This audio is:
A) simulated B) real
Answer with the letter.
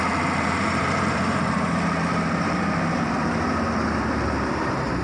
A